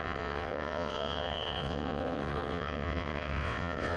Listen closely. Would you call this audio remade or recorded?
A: remade